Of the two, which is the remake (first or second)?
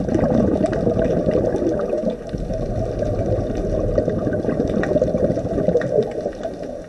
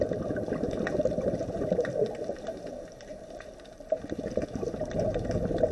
second